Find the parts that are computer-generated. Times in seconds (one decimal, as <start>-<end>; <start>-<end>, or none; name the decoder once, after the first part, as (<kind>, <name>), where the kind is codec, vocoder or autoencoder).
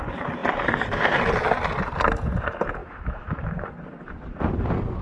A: 2.8-3.7 (autoencoder, DAC-VAE)